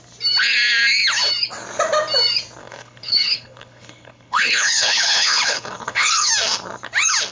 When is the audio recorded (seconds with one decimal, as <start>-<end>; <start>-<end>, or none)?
0.0-2.6; 6.3-7.3